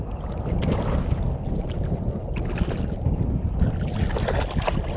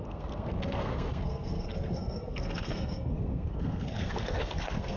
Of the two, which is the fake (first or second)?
second